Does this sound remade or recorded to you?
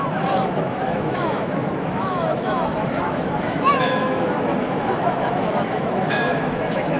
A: remade